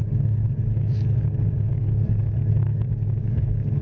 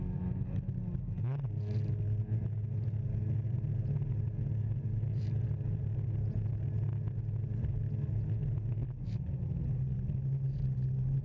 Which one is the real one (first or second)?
second